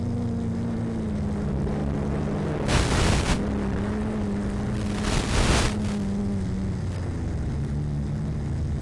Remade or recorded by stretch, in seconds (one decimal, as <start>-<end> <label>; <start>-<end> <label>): 0.0-8.8 recorded